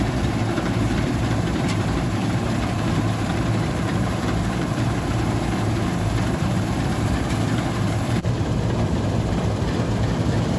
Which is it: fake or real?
fake